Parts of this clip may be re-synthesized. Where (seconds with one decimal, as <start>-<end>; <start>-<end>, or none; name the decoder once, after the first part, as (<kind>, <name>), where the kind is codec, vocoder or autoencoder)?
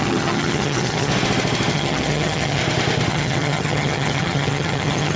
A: 0.0-1.1 (vocoder, HiFi-GAN); 1.7-2.6; 3.1-5.2